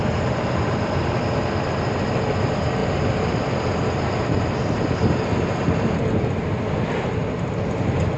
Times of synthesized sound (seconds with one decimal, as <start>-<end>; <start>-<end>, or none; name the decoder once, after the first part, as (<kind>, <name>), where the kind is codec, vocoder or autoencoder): none